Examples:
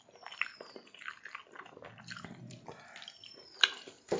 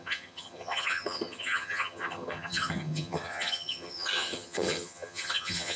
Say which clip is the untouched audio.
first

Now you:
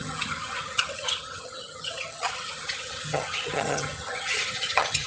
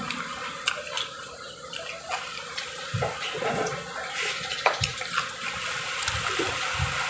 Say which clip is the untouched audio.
second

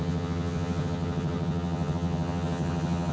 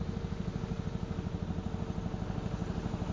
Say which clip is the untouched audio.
second